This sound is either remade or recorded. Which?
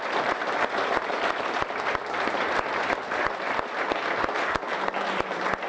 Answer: recorded